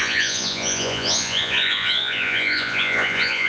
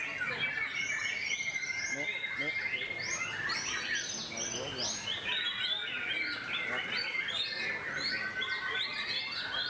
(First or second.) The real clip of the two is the second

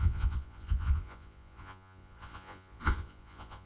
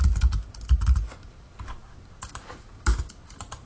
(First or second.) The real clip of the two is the second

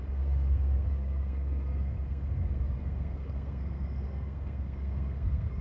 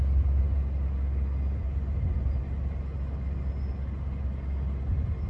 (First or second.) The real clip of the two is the second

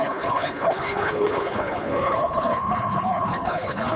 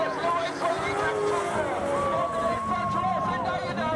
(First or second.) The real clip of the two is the second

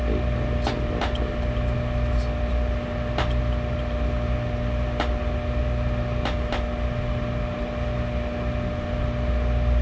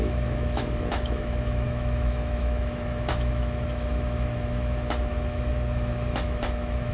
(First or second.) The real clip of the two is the first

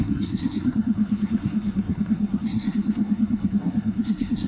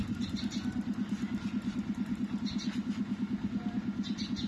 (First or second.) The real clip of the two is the second